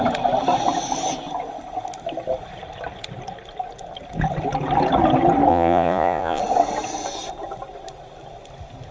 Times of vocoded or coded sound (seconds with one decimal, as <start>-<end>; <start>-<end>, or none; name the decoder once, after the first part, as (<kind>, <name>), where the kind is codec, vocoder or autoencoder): 5.5-6.4 (vocoder, Vocos)